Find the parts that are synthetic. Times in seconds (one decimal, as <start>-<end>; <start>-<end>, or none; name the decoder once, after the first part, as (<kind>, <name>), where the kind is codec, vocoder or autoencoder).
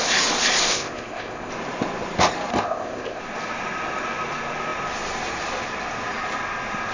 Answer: 0.7-1.5 (codec, ZipCodec); 2.5-3.2